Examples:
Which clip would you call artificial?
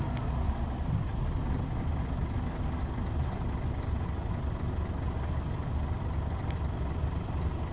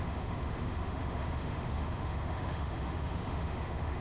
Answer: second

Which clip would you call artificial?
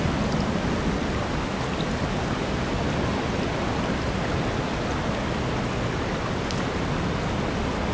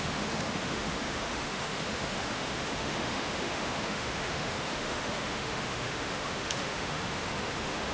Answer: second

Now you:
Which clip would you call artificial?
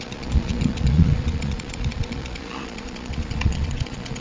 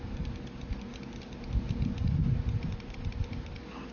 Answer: first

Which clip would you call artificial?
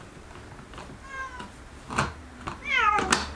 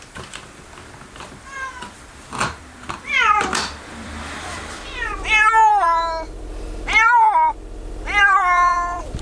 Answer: second